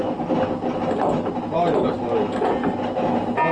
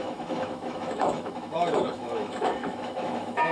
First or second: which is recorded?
first